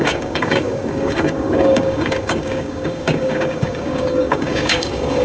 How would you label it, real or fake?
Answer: fake